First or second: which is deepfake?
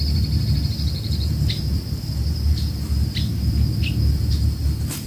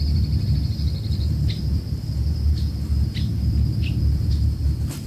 second